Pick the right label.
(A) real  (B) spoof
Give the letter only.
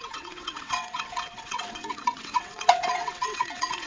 B